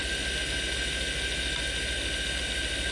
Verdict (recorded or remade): recorded